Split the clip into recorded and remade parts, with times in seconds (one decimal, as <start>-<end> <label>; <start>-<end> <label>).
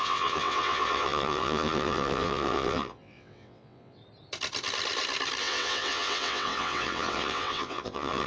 0.0-4.0 remade; 4.0-5.4 recorded; 5.4-8.3 remade